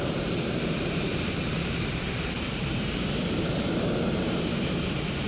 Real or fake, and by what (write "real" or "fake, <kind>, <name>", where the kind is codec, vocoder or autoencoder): fake, vocoder, BigVGAN v2